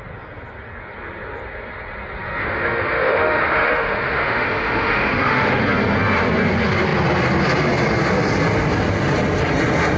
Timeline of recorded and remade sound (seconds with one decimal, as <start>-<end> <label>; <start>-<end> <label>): 0.0-2.4 recorded; 2.4-5.6 remade; 5.6-10.0 recorded